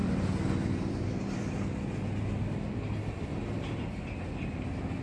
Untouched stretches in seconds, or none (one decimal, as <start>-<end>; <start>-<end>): 0.0-5.0

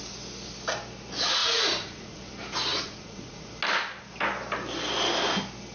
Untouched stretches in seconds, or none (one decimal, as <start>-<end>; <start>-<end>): 0.0-1.4; 2.2-2.7; 3.5-5.7